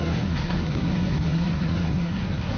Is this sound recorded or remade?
remade